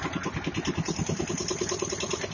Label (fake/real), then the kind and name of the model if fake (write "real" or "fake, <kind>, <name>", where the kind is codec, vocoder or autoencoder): real